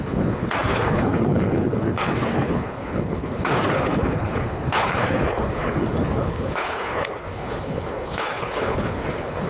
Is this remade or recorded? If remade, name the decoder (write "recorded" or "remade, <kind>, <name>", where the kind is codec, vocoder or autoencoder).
remade, codec, HILCodec